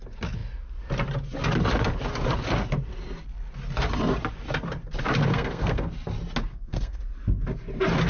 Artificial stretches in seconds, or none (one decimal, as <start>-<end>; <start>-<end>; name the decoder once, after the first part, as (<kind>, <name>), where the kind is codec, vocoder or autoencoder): 5.3-5.9 (codec, SNAC); 6.5-7.0